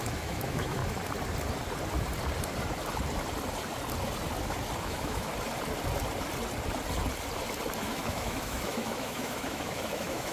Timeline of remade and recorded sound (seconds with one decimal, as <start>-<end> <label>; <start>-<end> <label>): 0.0-0.8 remade; 0.8-4.8 recorded; 4.8-5.3 remade; 5.3-7.8 recorded; 7.8-10.3 remade